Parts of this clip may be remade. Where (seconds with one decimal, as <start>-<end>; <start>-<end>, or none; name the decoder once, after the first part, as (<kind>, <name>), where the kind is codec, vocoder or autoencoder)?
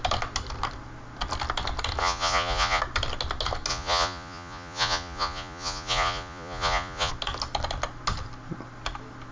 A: 2.0-2.8 (vocoder, Vocos); 3.7-7.1